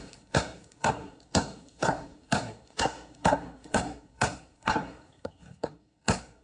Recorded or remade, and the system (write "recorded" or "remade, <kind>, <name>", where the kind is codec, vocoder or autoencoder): remade, codec, SNAC